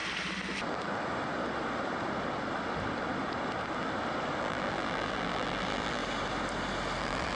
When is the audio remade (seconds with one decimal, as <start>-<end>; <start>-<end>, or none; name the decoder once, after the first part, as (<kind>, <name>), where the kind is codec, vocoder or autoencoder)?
4.4-6.0 (vocoder, BigVGAN v2); 7.0-7.4